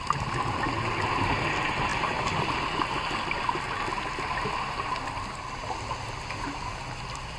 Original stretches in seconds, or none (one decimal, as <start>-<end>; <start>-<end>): 0.0-7.4